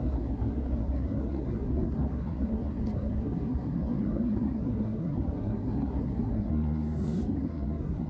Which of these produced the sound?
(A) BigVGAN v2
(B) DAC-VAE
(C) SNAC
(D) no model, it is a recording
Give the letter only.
C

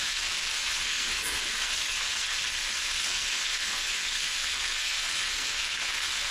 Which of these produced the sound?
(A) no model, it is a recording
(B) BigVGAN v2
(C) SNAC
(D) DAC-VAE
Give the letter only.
C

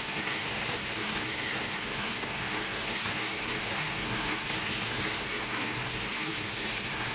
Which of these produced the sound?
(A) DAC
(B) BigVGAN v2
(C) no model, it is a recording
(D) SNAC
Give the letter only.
D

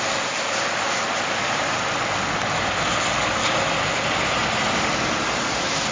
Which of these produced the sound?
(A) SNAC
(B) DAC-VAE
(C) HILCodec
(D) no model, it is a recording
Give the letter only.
D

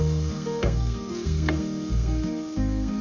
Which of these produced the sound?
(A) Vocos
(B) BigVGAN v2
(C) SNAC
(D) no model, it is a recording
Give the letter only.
C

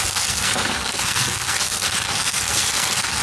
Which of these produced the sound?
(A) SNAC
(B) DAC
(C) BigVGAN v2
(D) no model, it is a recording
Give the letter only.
A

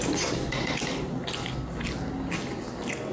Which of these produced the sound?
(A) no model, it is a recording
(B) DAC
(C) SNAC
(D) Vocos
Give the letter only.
A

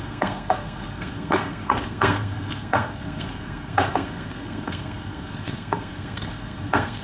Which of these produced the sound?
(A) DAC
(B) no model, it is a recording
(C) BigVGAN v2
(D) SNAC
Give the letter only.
D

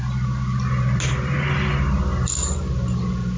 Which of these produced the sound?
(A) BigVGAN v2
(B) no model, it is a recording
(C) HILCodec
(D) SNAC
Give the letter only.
B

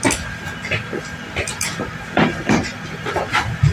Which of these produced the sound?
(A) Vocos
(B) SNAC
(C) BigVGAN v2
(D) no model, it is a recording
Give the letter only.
D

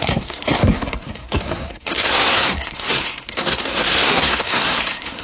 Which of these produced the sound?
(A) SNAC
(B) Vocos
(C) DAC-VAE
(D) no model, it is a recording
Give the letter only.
A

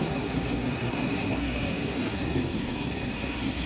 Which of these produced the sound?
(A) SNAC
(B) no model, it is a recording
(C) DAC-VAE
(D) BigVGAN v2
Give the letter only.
A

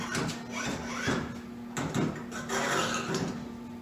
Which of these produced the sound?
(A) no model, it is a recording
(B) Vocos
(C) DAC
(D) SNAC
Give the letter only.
A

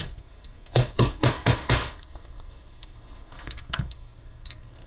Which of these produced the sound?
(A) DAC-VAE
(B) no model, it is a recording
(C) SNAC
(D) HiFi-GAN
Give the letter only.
C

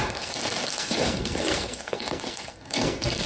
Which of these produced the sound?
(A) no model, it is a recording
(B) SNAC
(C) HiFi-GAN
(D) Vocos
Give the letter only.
B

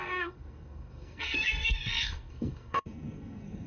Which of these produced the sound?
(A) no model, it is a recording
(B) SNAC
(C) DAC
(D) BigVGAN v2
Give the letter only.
B